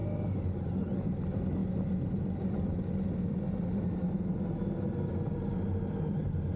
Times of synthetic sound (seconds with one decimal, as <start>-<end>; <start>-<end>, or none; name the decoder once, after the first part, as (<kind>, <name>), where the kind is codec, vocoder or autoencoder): none